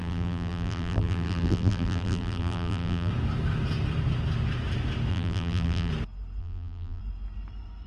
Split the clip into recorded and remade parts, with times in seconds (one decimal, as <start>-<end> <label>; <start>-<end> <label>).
0.0-3.1 remade; 3.1-5.1 recorded; 5.1-5.9 remade; 5.9-6.4 recorded; 6.4-7.0 remade; 7.0-7.9 recorded